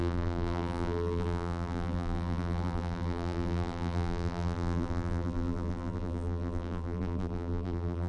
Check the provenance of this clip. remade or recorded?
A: remade